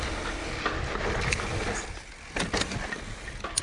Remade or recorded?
recorded